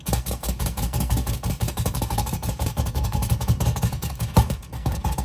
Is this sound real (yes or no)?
no